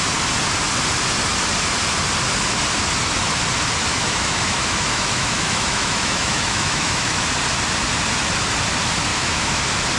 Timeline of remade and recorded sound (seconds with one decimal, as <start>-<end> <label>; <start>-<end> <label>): 0.0-3.9 recorded; 3.9-7.3 remade; 7.3-9.1 recorded; 9.1-9.6 remade; 9.6-10.0 recorded